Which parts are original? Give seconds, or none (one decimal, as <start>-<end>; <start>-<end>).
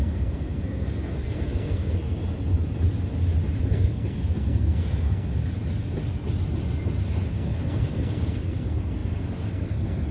2.2-3.6; 5.4-7.3